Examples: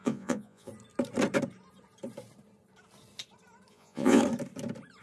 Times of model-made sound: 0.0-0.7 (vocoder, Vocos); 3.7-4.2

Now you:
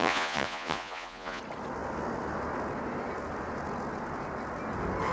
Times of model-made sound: 0.0-1.4 (vocoder, Vocos)

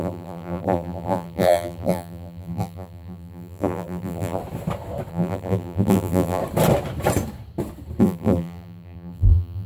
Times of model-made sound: 0.0-4.4 (vocoder, BigVGAN v2); 5.1-6.4; 8.0-9.7

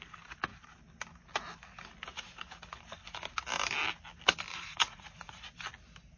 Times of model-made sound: 4.5-5.4 (vocoder, Vocos)